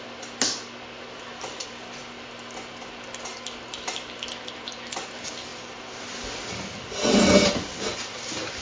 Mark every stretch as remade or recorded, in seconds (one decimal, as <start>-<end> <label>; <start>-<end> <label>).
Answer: 0.0-8.6 recorded